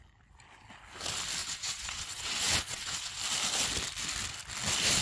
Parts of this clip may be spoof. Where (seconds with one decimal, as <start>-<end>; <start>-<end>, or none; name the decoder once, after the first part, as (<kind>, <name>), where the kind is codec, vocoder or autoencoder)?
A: 1.4-3.2 (vocoder, WaveNeXt)